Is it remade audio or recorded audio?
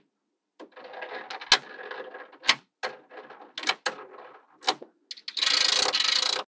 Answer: recorded